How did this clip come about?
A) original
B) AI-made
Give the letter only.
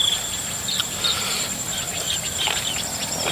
B